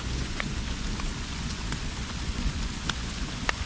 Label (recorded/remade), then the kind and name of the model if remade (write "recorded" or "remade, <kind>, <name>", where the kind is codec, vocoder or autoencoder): remade, vocoder, Vocos